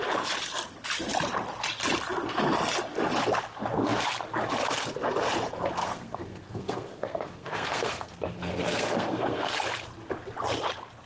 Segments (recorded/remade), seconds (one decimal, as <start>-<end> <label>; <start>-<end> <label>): 0.0-5.8 recorded; 5.8-9.6 remade; 9.6-11.1 recorded